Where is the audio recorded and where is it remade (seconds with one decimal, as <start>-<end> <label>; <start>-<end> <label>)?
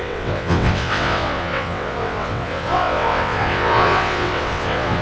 0.0-5.0 remade